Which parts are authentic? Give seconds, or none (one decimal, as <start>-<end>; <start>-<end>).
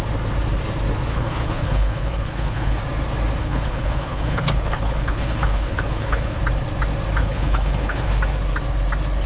0.0-1.1; 2.8-3.4; 6.4-7.2; 8.1-9.3